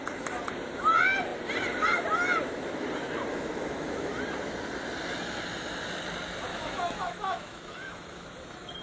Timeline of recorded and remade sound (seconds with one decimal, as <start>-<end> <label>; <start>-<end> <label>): 0.0-3.3 recorded; 3.3-4.1 remade; 4.1-6.5 recorded; 6.5-8.8 remade